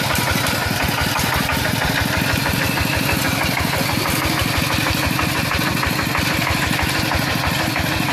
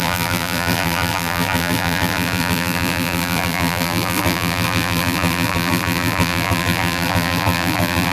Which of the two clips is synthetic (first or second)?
second